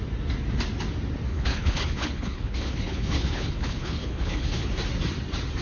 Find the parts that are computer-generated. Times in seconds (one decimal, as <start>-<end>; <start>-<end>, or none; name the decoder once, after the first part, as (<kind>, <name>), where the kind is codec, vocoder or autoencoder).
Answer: 1.3-4.7 (codec, HILCodec)